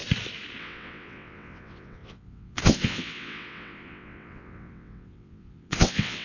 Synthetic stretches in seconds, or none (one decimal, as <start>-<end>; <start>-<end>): 0.6-6.2